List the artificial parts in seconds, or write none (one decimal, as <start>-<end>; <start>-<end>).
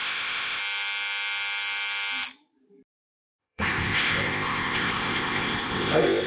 0.0-0.6; 3.4-6.3